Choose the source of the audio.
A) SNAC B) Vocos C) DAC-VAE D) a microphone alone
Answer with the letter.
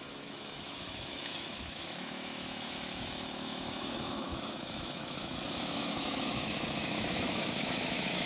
C